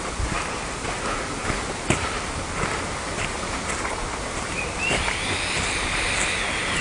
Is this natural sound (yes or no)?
yes